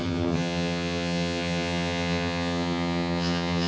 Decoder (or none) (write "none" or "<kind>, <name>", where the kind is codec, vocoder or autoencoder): vocoder, HiFi-GAN